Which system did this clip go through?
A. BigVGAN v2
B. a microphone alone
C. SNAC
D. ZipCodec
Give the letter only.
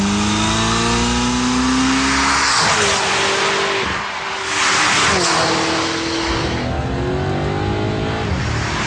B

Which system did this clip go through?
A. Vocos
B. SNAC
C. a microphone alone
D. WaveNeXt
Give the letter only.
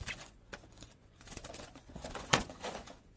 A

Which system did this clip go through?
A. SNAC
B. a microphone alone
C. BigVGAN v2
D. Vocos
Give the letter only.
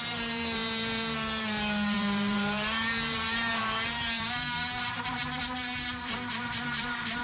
C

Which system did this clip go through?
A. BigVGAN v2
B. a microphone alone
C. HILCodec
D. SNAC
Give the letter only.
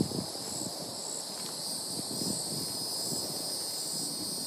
B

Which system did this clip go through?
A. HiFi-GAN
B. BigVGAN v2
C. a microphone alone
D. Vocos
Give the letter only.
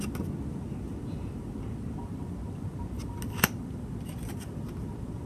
C